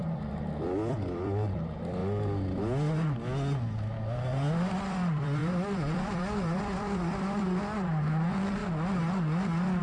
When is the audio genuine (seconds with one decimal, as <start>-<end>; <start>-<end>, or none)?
2.0-4.8; 8.6-9.8